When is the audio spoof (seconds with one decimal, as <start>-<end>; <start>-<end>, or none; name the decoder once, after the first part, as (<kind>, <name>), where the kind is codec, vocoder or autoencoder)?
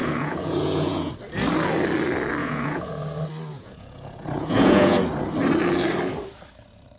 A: 0.0-1.1 (vocoder, Vocos); 2.4-2.9; 3.5-5.0